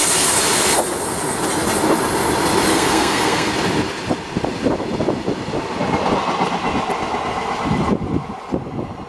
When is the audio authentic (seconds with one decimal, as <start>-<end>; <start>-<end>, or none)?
0.0-2.7; 3.5-9.1